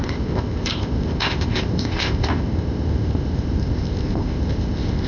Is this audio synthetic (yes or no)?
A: yes